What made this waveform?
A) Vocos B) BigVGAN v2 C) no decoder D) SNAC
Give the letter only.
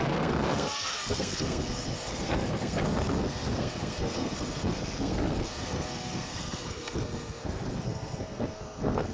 D